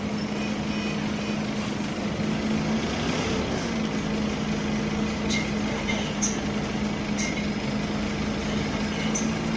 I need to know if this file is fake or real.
real